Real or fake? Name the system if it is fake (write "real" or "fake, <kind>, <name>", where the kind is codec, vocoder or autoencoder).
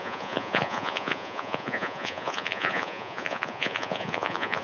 fake, vocoder, Vocos